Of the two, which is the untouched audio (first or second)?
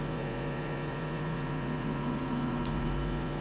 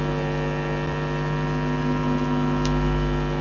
second